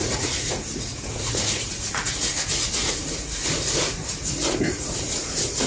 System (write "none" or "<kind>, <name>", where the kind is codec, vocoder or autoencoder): vocoder, Vocos